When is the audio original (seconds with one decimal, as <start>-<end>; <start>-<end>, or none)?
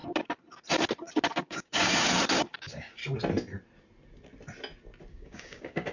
0.0-1.4; 1.9-2.6; 3.0-5.1